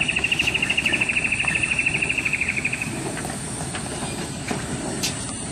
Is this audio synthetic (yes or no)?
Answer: yes